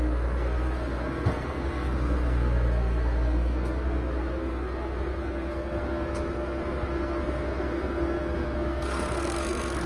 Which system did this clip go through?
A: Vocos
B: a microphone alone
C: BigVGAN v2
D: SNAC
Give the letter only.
D